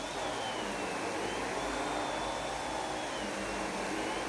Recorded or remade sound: recorded